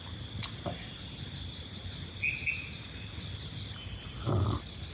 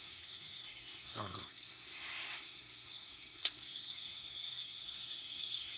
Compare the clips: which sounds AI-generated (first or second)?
second